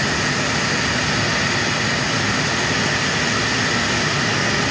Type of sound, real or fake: real